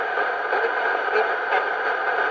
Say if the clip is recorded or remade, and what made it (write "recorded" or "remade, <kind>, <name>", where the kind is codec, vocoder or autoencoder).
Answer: recorded